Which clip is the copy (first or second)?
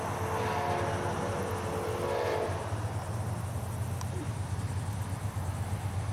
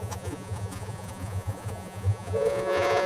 second